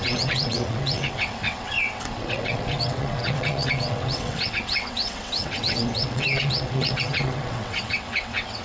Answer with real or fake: fake